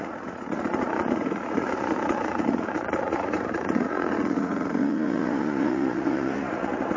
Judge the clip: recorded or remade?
remade